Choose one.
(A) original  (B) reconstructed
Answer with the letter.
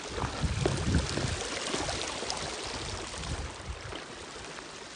A